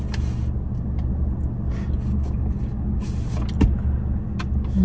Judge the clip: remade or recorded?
recorded